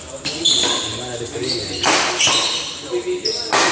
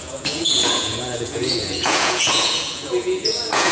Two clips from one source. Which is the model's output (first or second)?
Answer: second